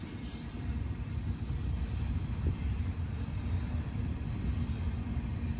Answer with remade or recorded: remade